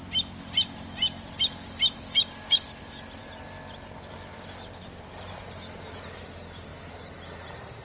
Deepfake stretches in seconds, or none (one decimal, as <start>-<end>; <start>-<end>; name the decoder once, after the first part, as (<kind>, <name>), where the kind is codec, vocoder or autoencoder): none